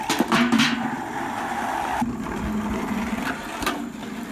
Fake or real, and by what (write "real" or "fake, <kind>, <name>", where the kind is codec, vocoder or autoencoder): real